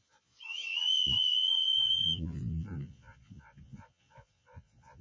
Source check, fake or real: fake